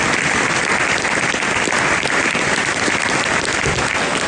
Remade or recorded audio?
recorded